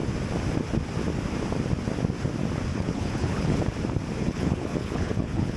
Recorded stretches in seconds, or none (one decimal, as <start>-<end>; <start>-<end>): 0.0-2.7; 3.6-4.2